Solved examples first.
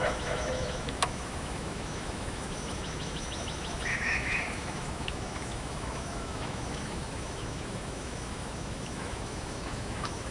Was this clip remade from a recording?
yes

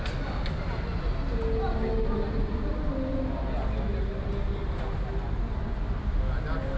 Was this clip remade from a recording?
no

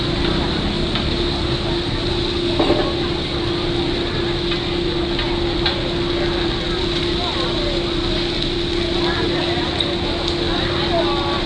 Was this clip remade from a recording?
no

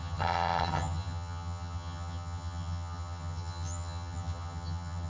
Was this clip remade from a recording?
yes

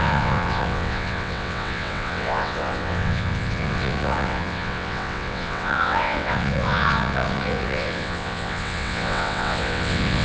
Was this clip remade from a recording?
yes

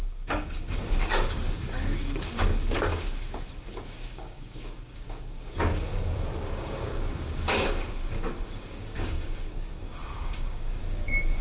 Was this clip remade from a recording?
yes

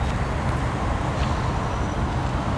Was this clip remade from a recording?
no